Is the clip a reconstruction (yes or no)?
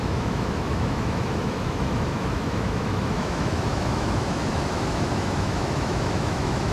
yes